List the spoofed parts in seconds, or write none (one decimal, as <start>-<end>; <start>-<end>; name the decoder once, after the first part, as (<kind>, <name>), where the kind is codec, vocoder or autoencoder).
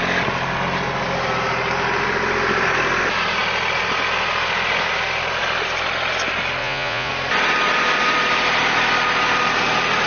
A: 6.6-7.1 (vocoder, Vocos)